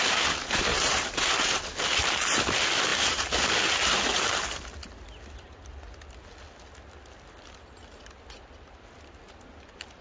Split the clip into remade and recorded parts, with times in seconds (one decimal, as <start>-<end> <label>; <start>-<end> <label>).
0.0-10.0 recorded